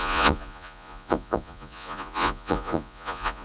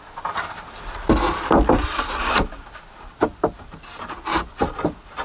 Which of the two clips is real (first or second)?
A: second